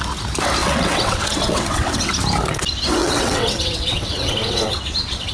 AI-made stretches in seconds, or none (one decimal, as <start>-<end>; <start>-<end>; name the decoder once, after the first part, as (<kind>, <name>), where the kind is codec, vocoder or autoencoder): 0.6-2.1 (vocoder, WaveNeXt); 3.0-5.3